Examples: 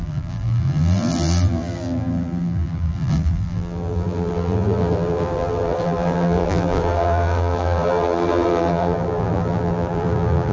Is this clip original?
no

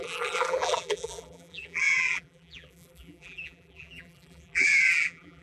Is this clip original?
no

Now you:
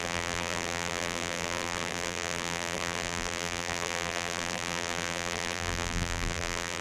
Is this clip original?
no